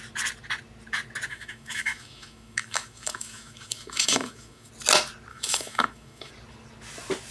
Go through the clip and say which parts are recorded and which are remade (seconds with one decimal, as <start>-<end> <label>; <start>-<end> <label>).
0.0-1.3 recorded; 1.3-4.7 remade; 4.7-5.3 recorded; 5.3-6.3 remade; 6.3-7.3 recorded